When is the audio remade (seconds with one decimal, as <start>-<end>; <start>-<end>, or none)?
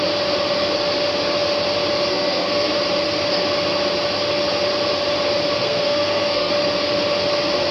2.1-2.7; 5.6-6.5